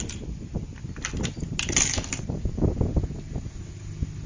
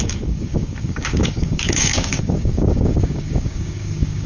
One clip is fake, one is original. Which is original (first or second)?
first